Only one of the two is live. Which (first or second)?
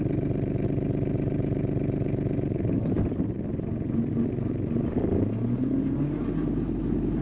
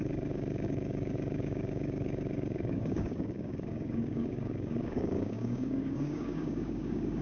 first